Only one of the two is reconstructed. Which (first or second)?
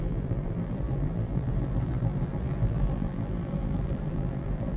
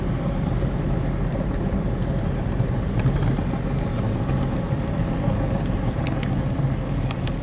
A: first